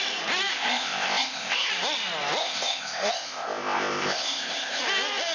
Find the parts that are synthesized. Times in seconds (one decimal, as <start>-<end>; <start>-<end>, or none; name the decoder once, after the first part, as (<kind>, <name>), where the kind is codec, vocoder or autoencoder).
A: 0.5-1.7 (codec, ZipCodec); 2.4-4.8